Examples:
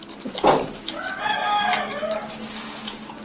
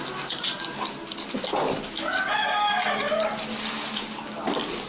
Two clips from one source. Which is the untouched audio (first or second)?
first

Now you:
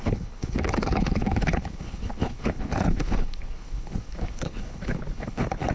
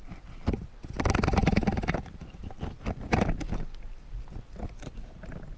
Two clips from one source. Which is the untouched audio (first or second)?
second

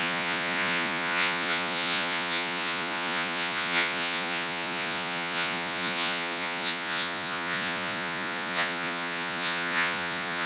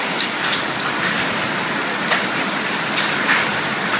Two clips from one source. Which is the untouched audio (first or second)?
second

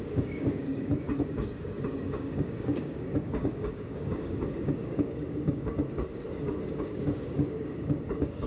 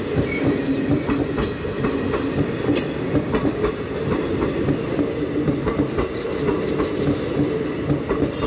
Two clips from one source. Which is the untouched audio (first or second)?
second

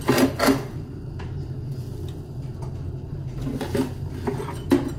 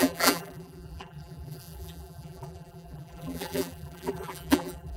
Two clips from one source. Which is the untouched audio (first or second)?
first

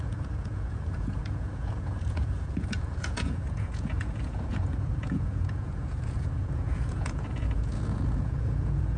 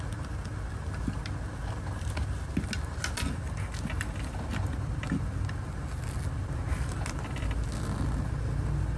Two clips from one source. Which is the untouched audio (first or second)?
second